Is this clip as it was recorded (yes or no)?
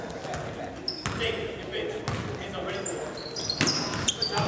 yes